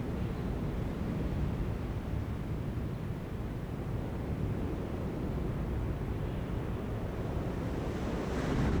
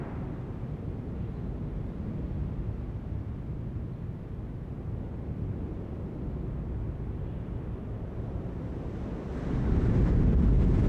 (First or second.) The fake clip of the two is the first